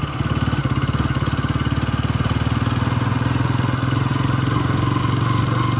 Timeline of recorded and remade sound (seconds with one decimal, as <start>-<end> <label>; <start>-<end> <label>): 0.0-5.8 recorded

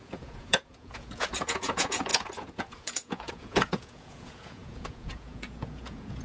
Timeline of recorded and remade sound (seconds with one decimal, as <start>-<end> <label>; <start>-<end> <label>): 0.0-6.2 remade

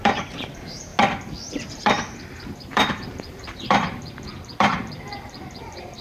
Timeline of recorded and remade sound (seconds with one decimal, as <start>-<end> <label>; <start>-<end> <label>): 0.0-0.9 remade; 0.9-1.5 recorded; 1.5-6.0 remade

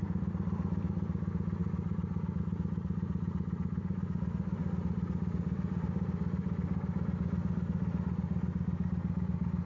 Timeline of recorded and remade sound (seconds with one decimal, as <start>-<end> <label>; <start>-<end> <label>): 0.0-9.7 recorded